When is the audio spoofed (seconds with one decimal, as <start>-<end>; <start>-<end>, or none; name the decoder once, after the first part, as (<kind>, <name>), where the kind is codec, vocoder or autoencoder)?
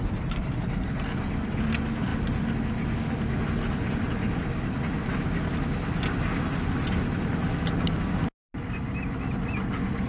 none